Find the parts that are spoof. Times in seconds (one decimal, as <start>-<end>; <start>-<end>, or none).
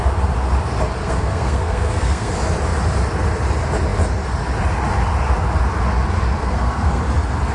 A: 1.0-2.3; 6.4-7.0